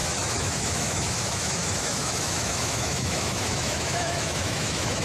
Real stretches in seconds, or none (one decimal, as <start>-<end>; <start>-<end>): none